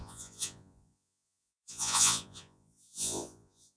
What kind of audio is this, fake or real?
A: fake